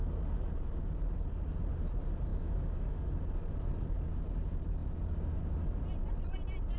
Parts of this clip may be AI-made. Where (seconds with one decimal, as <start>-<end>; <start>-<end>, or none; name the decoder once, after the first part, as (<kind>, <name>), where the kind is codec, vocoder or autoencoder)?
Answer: 2.3-3.1 (autoencoder, DAC-VAE)